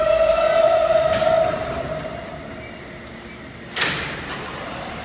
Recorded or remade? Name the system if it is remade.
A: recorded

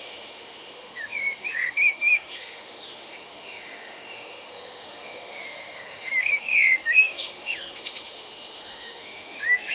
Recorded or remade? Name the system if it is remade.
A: remade, autoencoder, DAC-VAE